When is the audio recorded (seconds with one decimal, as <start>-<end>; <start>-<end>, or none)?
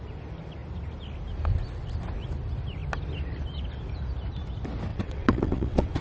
0.0-4.9